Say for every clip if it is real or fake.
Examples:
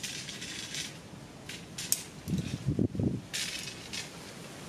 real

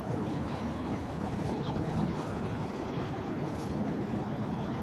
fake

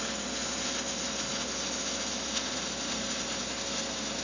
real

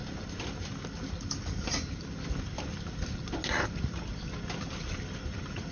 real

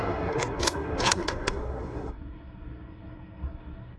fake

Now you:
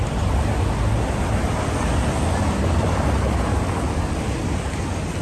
real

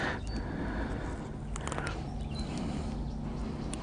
real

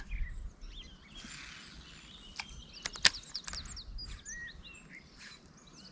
real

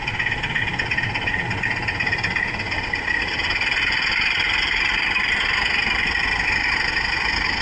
real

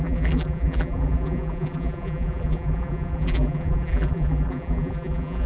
fake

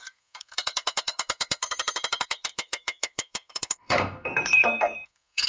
fake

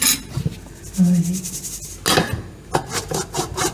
real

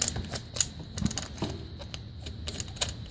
real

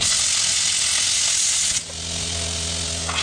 real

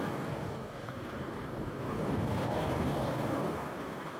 fake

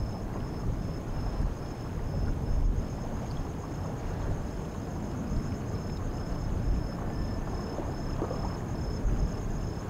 real